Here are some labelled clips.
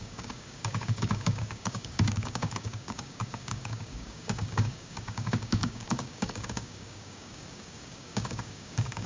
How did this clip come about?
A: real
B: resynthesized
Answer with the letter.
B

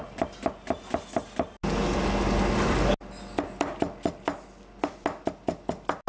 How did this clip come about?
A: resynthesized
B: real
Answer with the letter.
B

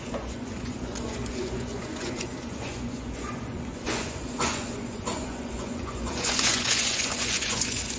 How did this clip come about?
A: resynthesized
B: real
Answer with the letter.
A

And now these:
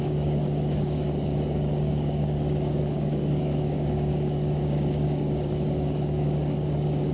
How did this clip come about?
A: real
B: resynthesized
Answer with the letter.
B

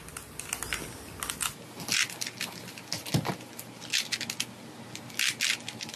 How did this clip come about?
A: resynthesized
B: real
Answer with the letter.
B